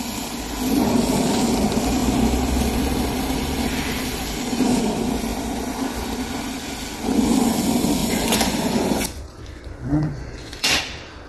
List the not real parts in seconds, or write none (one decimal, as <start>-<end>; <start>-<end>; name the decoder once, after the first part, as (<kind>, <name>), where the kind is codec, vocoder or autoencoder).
8.0-10.8 (vocoder, Vocos)